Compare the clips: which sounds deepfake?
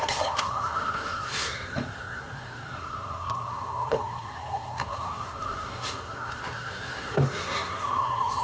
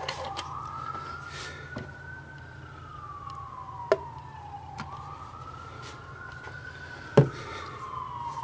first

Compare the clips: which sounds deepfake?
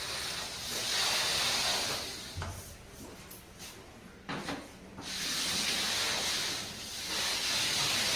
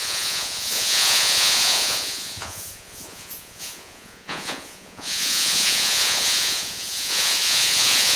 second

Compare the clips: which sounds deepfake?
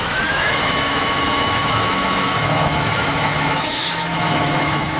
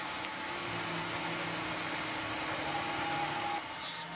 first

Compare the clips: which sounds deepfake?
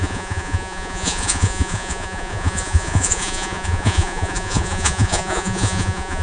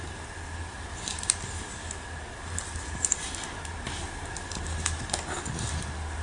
first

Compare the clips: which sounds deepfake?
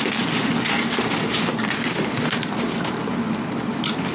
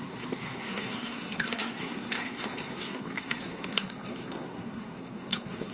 second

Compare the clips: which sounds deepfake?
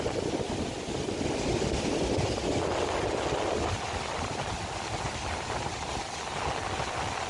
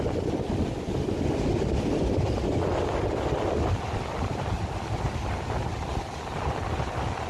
second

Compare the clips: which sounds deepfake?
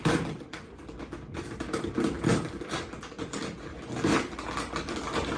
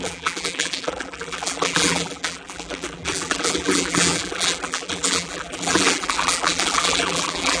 second